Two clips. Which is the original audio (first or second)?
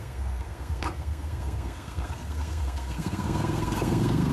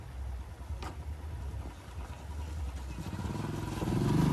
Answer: second